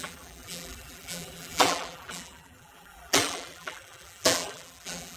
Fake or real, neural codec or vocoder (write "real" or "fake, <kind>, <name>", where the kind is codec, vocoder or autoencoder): fake, vocoder, BigVGAN v2